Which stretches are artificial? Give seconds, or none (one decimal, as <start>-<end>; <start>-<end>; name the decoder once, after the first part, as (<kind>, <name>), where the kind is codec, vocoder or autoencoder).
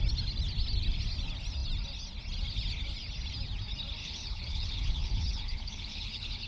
4.0-6.5 (codec, HILCodec)